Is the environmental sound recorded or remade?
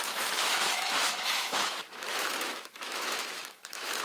remade